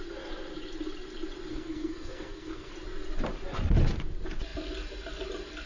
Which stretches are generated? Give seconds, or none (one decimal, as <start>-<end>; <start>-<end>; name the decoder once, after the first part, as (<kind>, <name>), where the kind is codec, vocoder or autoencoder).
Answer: 1.5-2.7 (codec, SNAC)